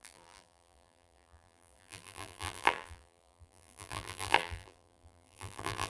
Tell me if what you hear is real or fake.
fake